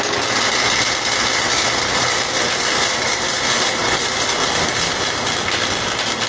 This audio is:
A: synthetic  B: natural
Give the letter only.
B